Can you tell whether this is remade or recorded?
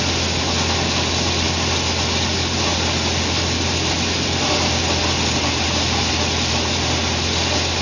recorded